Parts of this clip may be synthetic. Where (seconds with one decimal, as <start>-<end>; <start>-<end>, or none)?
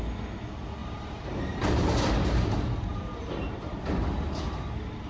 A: 0.8-3.9